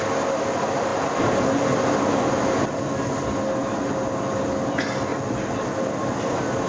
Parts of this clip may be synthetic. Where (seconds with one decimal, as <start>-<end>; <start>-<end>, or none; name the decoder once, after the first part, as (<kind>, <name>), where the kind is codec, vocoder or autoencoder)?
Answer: none